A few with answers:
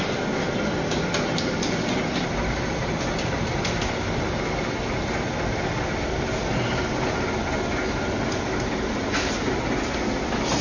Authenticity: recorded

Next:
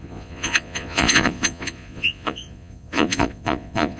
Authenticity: remade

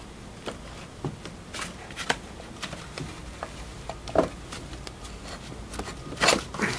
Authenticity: recorded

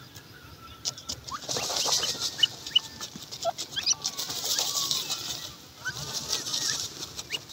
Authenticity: recorded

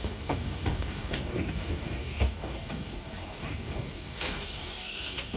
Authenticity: remade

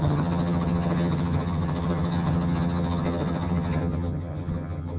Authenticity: remade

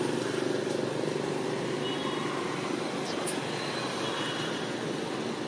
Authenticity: recorded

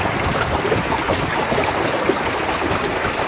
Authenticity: recorded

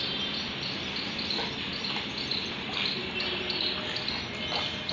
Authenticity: recorded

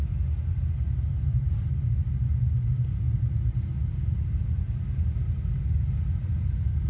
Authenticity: recorded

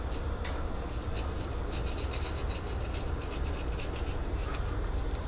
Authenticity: recorded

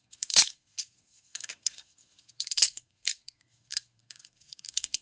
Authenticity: remade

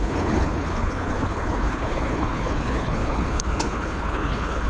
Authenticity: remade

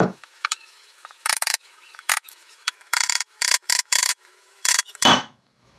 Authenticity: remade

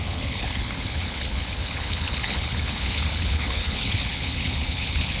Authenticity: remade